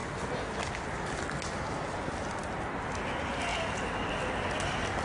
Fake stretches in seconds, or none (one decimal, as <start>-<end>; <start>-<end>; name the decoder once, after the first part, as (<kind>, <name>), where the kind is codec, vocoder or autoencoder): none